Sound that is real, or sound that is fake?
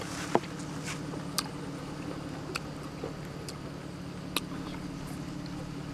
real